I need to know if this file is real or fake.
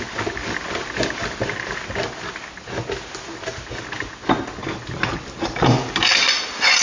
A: real